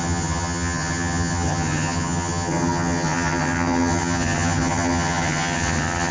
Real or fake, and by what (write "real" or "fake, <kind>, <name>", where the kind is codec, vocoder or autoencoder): fake, vocoder, HiFi-GAN